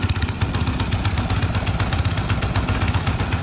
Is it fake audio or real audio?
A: real